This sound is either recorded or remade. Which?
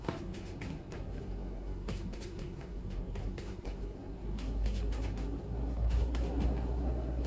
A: remade